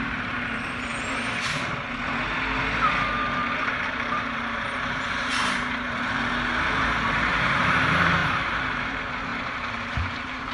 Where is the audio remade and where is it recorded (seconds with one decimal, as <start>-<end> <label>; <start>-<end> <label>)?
0.0-0.9 remade; 0.9-3.7 recorded; 3.7-10.5 remade